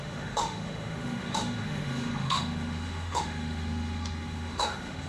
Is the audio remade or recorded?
remade